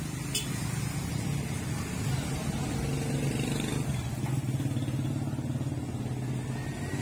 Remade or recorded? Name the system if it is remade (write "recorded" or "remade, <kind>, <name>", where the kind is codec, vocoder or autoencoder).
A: recorded